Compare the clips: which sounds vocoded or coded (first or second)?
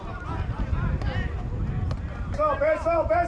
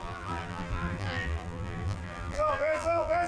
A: second